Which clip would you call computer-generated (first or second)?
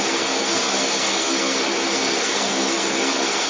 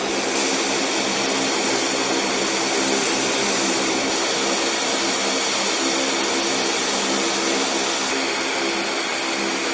first